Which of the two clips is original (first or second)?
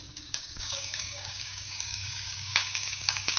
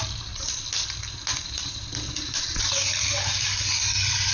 second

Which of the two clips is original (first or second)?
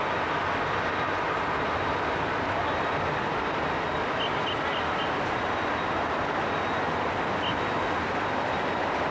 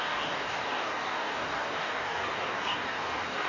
first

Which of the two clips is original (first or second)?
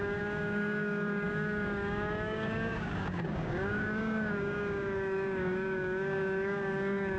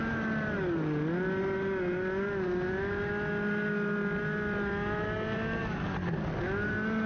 second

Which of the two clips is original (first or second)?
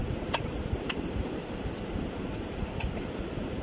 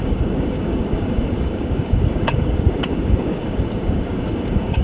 first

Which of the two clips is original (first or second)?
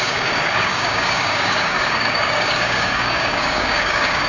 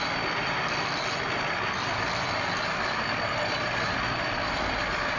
second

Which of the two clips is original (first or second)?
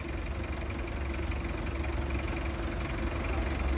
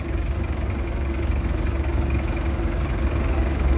first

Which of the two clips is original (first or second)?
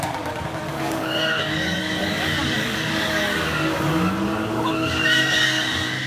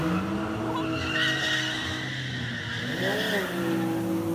second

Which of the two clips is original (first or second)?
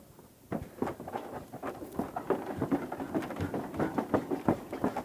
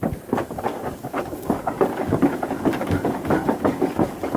first